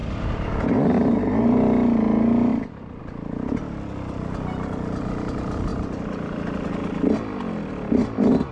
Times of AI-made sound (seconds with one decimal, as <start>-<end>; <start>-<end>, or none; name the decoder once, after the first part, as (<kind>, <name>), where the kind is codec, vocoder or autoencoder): 0.0-0.5 (vocoder, BigVGAN v2); 2.5-3.0; 5.7-6.7